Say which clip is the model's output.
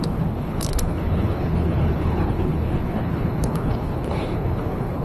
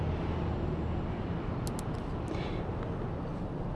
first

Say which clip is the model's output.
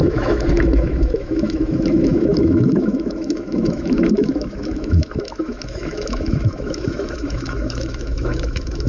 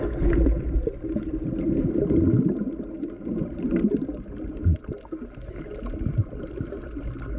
first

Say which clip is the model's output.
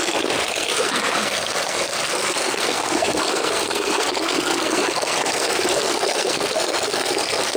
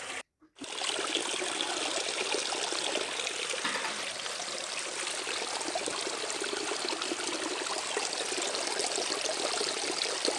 first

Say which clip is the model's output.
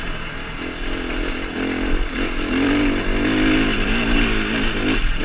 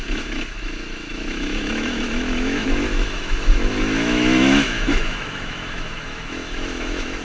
second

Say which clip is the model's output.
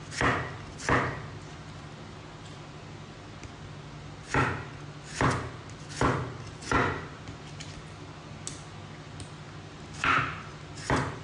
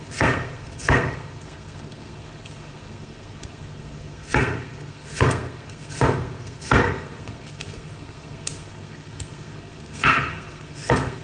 second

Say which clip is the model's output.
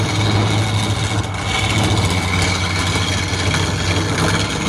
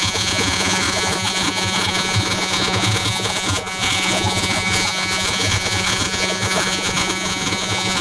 second